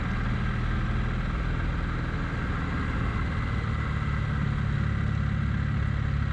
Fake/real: real